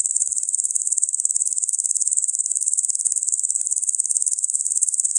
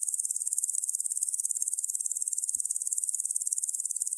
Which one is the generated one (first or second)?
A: first